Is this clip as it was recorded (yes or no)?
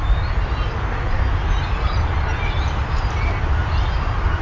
yes